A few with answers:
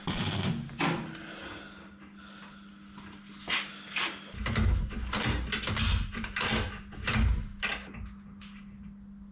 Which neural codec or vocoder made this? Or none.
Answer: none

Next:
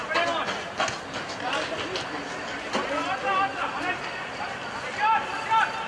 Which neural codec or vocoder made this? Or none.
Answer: none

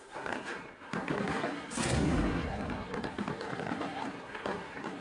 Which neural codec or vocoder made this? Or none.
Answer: codec, SNAC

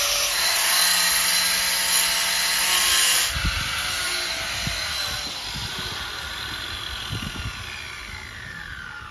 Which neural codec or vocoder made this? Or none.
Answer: none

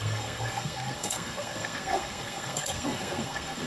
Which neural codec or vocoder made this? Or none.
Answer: codec, SNAC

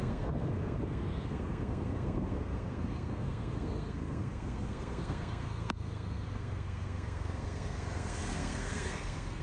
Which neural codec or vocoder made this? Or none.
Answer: codec, SNAC